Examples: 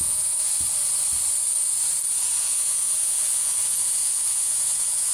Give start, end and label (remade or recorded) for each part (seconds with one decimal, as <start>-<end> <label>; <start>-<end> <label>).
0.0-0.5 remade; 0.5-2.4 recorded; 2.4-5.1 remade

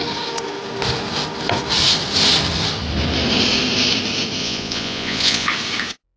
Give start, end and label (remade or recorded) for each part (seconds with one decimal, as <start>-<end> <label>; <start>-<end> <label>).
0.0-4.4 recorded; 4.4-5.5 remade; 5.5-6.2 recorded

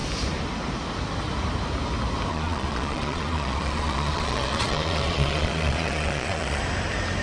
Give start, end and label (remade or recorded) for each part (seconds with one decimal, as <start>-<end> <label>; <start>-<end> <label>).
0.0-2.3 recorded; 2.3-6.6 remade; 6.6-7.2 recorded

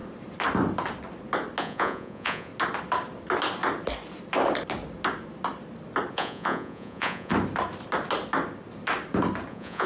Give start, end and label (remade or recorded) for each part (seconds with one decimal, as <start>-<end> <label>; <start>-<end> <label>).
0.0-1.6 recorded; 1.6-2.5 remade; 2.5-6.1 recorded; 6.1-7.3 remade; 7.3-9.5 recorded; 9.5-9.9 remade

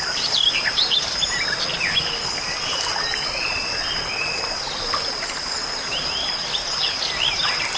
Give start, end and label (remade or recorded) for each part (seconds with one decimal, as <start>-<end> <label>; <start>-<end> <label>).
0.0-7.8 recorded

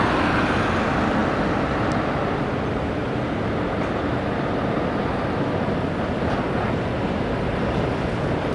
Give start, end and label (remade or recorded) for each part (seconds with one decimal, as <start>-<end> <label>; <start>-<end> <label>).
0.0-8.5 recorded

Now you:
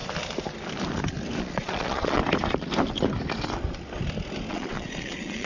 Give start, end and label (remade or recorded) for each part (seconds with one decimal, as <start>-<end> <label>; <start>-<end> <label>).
0.0-1.4 recorded; 1.4-2.2 remade; 2.2-4.5 recorded; 4.5-5.5 remade